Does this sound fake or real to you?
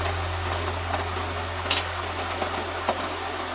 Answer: real